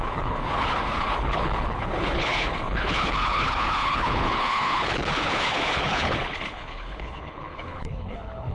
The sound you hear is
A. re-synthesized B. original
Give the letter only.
A